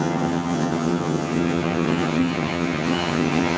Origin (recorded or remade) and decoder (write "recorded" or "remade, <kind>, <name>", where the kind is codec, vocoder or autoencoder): remade, vocoder, HiFi-GAN